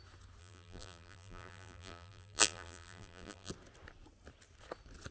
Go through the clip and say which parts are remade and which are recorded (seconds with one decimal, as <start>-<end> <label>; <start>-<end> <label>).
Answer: 0.0-0.4 recorded; 0.4-3.5 remade; 3.5-5.1 recorded